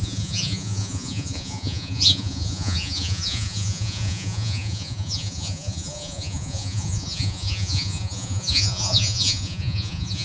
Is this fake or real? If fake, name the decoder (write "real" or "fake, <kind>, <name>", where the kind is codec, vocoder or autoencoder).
fake, vocoder, Vocos